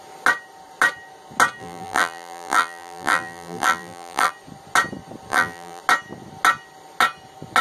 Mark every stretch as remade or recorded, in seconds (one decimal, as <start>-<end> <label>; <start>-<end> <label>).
0.0-1.6 recorded; 1.6-4.3 remade; 4.3-5.3 recorded; 5.3-5.8 remade; 5.8-7.6 recorded